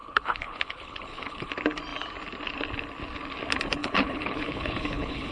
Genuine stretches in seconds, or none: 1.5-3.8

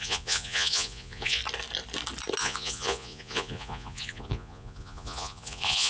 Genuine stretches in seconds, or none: 1.4-2.4